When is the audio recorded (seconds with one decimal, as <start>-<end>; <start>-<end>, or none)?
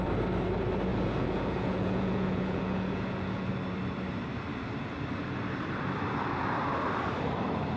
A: 0.0-0.9; 3.5-7.8